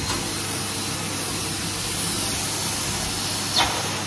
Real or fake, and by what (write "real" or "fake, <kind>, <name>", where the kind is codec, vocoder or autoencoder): real